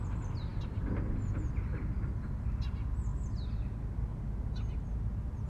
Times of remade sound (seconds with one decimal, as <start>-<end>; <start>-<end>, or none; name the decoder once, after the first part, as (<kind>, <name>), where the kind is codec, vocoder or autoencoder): none